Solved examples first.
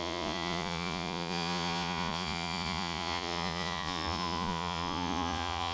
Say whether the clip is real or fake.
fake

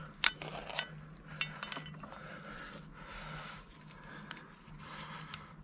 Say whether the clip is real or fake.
real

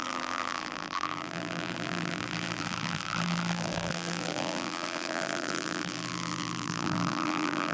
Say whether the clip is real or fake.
fake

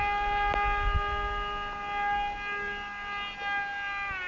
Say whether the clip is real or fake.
real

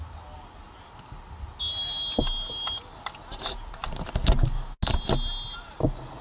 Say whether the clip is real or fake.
real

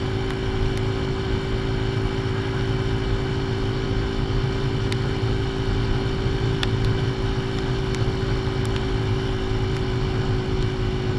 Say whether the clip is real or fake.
real